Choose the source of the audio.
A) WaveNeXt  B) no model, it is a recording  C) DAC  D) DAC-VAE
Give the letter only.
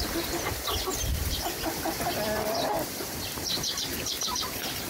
B